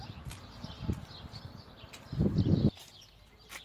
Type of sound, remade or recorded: remade